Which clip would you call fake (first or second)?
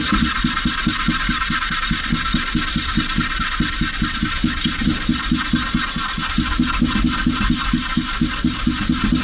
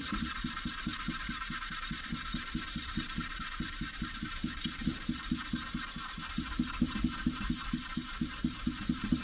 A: second